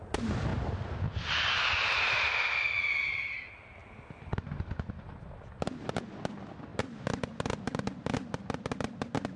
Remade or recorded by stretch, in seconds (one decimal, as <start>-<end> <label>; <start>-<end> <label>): 0.0-9.4 recorded